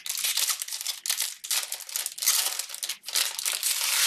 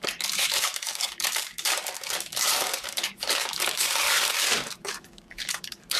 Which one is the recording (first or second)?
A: first